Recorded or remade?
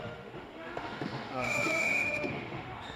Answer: remade